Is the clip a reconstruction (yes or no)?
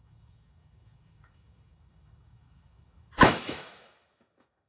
yes